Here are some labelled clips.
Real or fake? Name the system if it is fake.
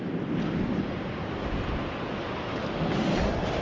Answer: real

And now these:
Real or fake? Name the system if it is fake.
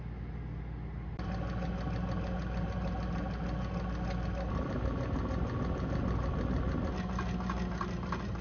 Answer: real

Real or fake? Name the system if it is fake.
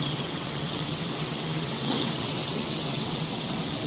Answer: fake, vocoder, WaveNeXt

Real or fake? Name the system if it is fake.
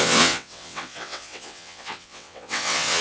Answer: fake, vocoder, WaveNeXt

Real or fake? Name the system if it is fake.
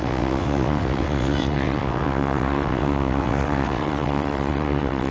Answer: fake, vocoder, WaveNeXt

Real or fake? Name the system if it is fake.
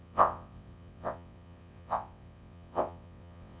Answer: fake, vocoder, WaveNeXt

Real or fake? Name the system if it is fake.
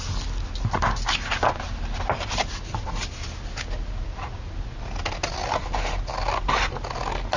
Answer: real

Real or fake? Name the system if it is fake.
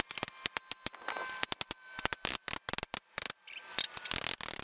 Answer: real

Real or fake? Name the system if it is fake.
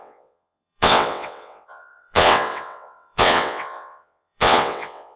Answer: fake, vocoder, WaveNeXt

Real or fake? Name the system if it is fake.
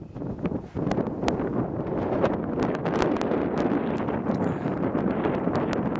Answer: real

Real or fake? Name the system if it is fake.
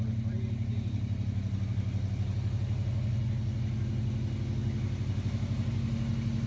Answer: real